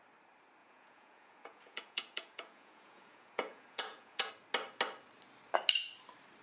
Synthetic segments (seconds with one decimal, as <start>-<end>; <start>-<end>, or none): 0.6-4.3